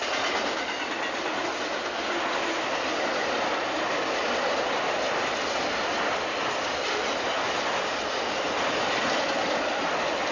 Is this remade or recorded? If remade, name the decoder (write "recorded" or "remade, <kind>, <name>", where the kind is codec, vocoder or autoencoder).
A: recorded